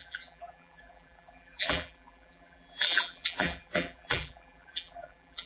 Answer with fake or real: fake